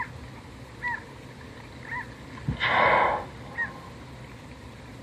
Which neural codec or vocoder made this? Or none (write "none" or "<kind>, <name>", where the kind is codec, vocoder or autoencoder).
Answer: none